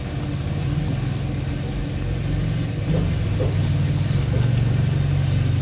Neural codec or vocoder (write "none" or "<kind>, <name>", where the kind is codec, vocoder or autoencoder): none